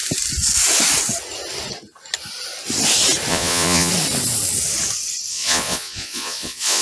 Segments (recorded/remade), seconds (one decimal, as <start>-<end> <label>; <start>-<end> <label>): 0.0-3.3 recorded; 3.3-3.9 remade; 3.9-5.3 recorded; 5.3-6.8 remade